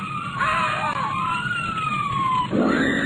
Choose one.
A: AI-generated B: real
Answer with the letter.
B